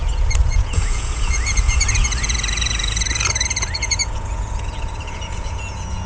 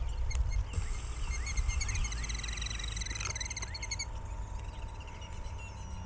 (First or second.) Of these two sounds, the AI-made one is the first